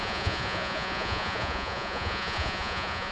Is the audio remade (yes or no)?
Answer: yes